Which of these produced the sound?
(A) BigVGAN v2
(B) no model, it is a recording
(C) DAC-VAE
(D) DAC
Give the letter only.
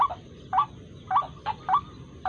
B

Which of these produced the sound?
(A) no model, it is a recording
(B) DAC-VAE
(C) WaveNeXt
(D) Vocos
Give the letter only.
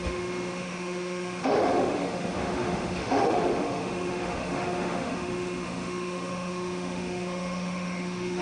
B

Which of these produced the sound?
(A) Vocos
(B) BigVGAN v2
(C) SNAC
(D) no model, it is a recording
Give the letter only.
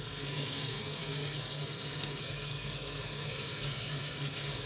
C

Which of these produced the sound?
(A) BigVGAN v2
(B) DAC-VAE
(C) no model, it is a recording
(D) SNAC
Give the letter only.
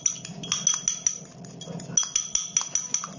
C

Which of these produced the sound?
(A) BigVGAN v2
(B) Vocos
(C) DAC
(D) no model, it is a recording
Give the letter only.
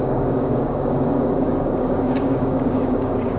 C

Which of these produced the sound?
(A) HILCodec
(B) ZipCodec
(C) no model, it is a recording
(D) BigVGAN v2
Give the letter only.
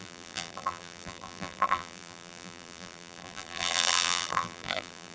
D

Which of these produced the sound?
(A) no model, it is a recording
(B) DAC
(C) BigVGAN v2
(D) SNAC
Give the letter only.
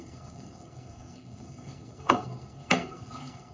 D